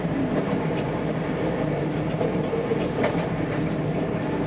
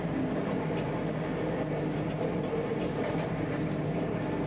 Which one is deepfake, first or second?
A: first